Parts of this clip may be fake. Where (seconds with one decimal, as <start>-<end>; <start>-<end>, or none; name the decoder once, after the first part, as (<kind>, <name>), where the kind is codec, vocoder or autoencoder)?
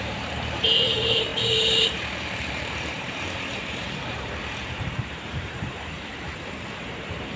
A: 0.0-6.1 (vocoder, BigVGAN v2); 6.8-7.4